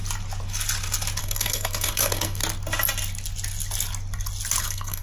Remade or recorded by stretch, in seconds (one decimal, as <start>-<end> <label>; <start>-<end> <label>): 0.0-1.2 recorded; 1.2-2.4 remade; 2.4-4.6 recorded; 4.6-5.0 remade